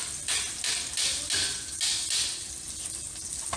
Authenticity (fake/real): real